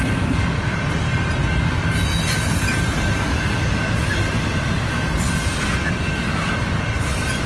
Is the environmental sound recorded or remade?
remade